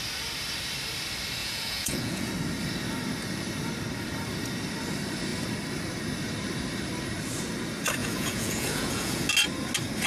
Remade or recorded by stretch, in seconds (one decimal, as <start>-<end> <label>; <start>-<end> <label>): 0.0-1.4 recorded; 1.4-2.3 remade; 2.3-8.0 recorded; 8.0-9.3 remade; 9.3-10.1 recorded